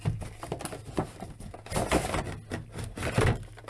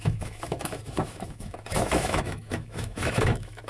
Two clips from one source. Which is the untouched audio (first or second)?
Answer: first